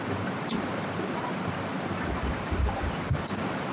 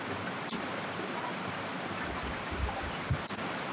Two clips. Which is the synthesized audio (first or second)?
first